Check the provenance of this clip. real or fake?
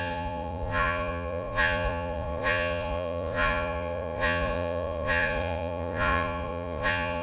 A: fake